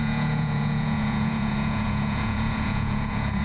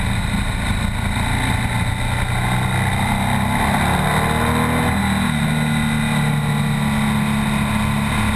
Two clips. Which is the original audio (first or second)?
second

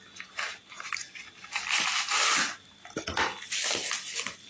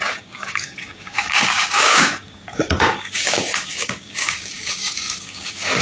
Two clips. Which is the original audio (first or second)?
first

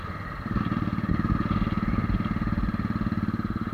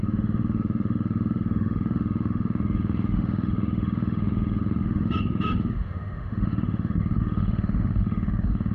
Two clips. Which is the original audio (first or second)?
first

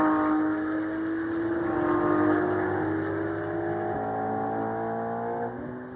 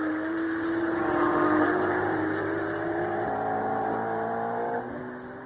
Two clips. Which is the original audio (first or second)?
first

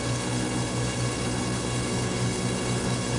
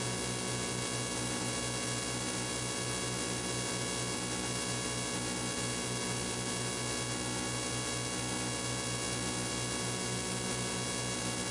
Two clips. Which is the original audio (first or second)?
second